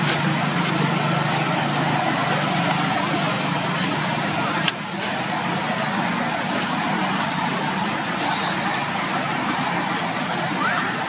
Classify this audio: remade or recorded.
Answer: recorded